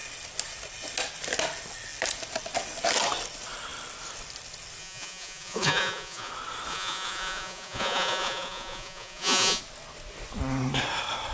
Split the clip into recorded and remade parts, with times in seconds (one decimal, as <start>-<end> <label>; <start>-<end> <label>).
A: 0.0-4.8 recorded; 4.8-6.3 remade; 6.3-6.7 recorded; 6.7-9.6 remade; 9.6-11.3 recorded